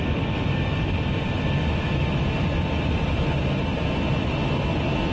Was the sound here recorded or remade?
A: recorded